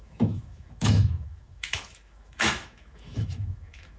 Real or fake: fake